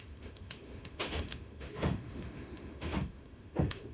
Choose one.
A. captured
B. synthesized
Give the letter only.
B